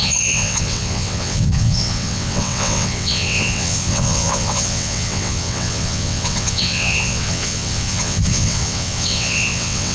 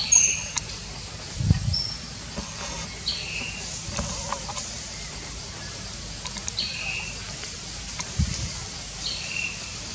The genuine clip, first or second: second